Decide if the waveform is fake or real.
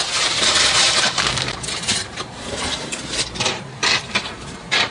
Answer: fake